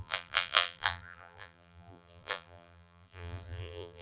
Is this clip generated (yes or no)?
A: yes